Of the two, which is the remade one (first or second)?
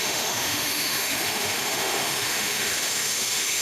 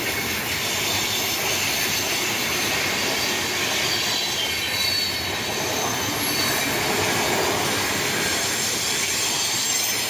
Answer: first